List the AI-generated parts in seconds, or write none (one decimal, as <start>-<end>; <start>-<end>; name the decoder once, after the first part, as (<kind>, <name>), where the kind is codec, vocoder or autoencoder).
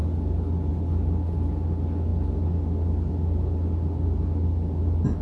none